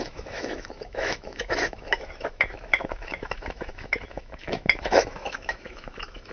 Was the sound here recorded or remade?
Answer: remade